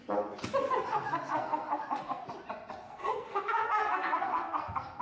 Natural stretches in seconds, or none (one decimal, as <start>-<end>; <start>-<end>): 0.0-0.9; 2.3-2.8